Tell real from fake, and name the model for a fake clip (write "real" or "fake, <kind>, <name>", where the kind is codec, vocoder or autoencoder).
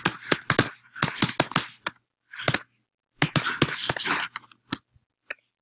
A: real